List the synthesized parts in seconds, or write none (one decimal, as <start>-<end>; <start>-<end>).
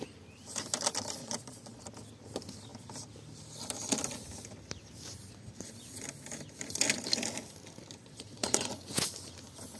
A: 1.2-1.8; 8.0-8.7